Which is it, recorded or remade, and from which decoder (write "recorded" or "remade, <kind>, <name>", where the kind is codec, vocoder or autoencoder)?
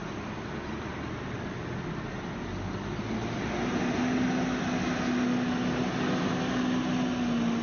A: recorded